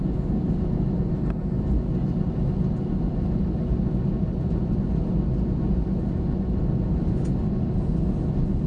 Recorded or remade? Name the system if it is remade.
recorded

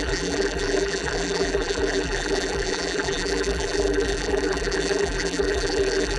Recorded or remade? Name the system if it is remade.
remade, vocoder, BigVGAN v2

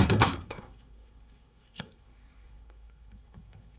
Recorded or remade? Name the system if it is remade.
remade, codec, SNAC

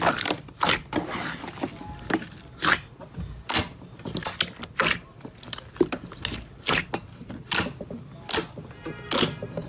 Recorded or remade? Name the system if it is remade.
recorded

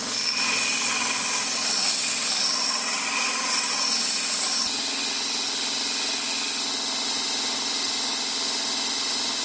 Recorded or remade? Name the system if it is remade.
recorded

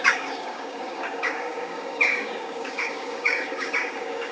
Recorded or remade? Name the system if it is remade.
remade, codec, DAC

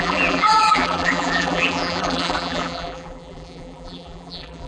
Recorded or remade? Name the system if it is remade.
remade, vocoder, BigVGAN v2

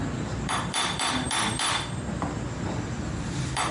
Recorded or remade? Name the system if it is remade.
remade, vocoder, BigVGAN v2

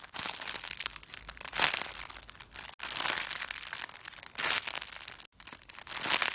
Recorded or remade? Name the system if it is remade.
recorded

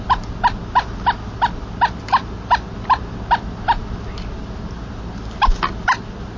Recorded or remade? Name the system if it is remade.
recorded